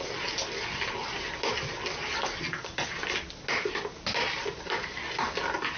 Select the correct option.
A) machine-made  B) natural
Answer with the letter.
B